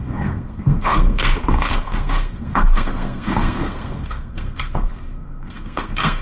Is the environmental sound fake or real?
fake